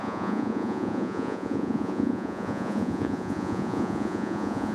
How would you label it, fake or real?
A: fake